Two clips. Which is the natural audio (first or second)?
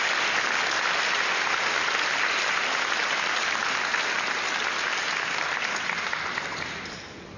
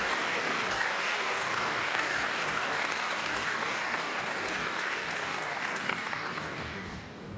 first